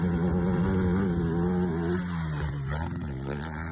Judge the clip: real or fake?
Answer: real